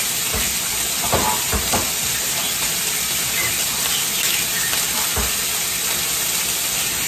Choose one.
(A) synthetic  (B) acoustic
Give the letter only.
B